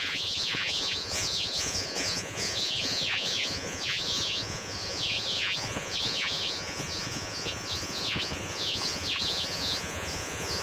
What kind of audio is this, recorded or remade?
remade